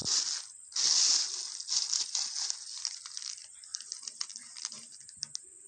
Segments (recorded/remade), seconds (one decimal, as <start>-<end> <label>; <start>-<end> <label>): 0.0-5.7 recorded